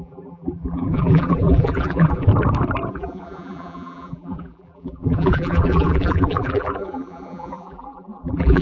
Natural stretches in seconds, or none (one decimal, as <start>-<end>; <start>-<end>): 2.3-2.9

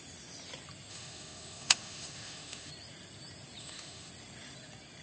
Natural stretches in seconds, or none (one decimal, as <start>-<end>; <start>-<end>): 0.0-0.9; 2.7-3.6; 4.1-5.0

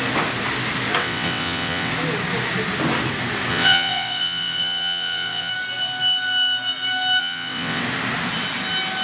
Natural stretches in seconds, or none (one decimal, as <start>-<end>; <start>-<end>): 0.0-1.0; 1.9-3.5; 5.5-7.2; 7.8-9.0

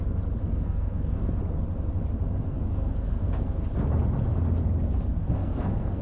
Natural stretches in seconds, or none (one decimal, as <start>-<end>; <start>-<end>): 0.0-0.4; 1.2-2.4; 3.6-5.2

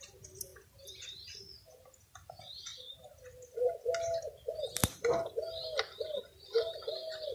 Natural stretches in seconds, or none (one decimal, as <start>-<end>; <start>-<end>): 0.0-7.3